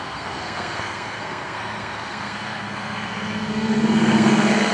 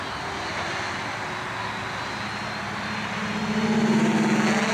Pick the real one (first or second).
second